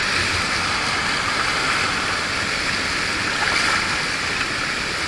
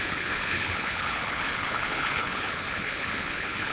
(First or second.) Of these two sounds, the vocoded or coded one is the second